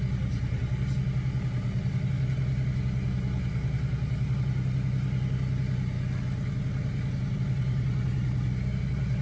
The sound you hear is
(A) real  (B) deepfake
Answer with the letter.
A